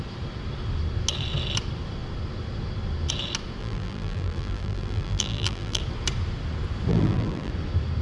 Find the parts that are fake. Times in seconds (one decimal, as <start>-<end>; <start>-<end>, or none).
3.6-5.8; 6.9-7.5